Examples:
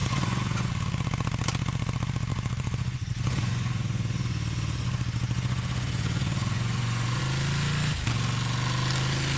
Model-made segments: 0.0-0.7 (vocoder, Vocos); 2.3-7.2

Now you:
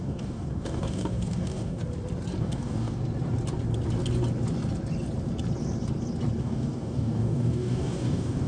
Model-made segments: 0.0-1.8 (codec, DAC); 2.4-3.0; 6.4-8.5

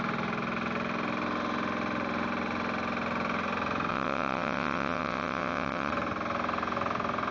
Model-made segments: 3.9-5.9 (vocoder, WaveNeXt)

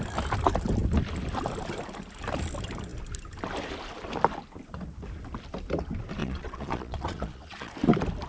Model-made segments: 6.2-7.7 (vocoder, Vocos)

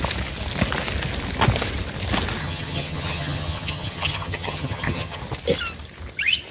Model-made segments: 2.4-5.2 (vocoder, HiFi-GAN)